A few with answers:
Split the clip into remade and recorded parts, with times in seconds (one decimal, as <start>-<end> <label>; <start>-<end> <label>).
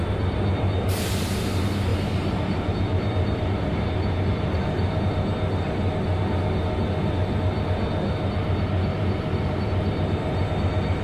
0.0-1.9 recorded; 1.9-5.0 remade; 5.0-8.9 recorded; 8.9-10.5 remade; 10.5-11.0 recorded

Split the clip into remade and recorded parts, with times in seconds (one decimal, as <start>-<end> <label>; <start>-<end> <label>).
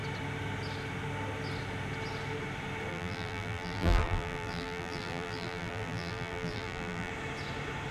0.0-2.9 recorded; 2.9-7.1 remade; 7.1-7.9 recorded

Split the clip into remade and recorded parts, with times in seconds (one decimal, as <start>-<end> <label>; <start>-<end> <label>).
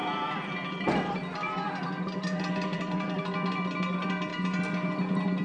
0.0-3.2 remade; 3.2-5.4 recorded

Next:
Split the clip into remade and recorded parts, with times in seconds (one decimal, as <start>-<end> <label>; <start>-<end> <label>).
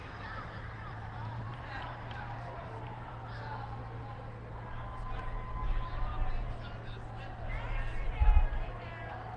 0.0-3.1 remade; 3.1-9.4 recorded